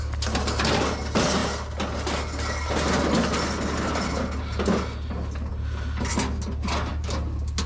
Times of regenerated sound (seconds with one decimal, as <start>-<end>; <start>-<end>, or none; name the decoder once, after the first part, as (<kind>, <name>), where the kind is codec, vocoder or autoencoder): none